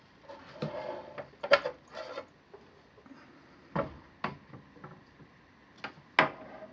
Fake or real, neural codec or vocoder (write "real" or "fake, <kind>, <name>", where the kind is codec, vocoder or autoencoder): real